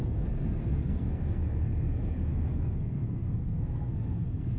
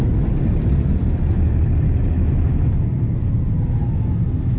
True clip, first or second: second